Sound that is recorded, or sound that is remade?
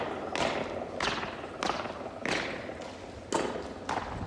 recorded